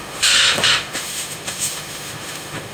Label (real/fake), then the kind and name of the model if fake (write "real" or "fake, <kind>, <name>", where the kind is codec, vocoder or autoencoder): fake, autoencoder, DAC-VAE